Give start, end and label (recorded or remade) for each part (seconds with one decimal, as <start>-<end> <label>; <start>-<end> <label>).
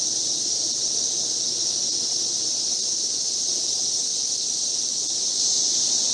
0.0-4.1 remade; 4.1-5.2 recorded; 5.2-6.1 remade